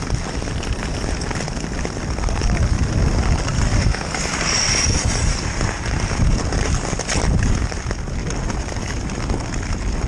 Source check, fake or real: real